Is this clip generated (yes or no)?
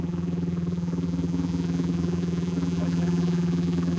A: yes